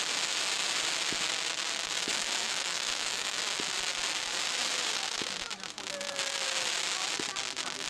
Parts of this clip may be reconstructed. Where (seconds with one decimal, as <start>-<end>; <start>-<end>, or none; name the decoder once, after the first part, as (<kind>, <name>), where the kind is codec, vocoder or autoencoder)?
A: 2.1-3.4 (autoencoder, DAC-VAE)